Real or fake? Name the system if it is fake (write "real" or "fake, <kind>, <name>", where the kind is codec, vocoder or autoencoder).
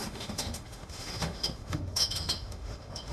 fake, autoencoder, DAC-VAE